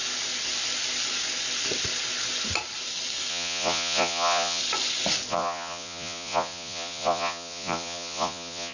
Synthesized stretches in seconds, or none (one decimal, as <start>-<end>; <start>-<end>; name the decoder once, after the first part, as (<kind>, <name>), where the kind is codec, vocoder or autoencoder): 3.3-4.6 (vocoder, Vocos); 5.3-8.7